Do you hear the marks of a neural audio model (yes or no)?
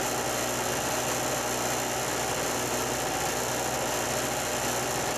no